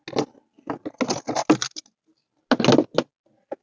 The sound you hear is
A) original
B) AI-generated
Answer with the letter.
A